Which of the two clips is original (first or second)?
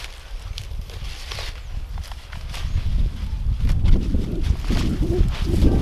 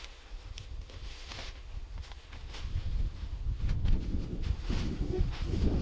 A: first